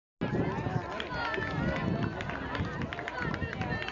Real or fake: real